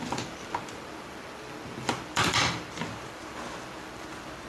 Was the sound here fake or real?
fake